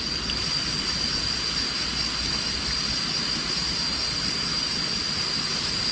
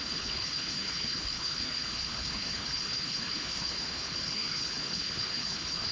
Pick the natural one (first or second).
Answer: first